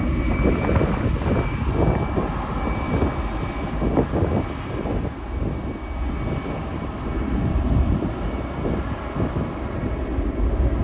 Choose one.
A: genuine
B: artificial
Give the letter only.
A